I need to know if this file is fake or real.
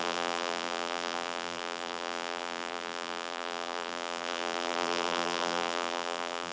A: fake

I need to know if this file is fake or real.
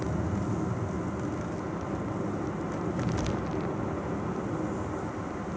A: real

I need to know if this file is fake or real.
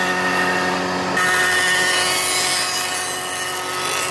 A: real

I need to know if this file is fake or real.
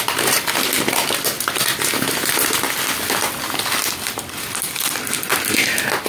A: real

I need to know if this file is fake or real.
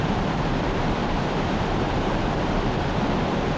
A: fake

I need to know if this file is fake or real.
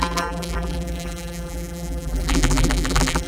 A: fake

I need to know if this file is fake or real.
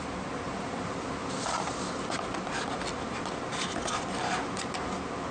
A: real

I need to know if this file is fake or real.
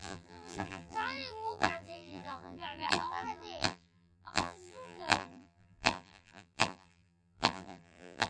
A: fake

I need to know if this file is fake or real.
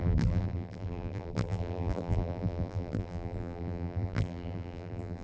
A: fake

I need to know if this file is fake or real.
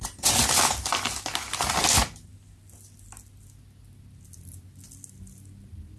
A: real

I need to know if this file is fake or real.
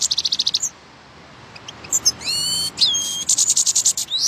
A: fake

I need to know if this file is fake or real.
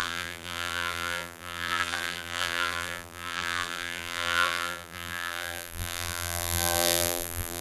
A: fake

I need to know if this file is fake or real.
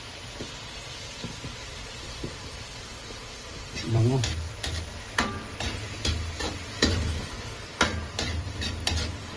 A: fake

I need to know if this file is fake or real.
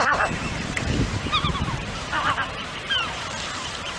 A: fake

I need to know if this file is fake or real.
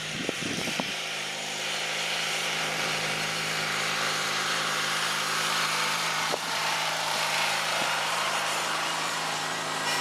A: fake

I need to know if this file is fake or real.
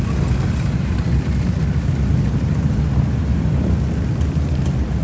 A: real